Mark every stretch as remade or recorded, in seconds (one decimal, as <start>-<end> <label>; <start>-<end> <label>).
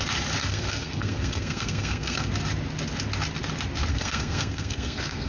0.0-0.4 recorded; 0.4-2.3 remade; 2.3-3.9 recorded; 3.9-5.3 remade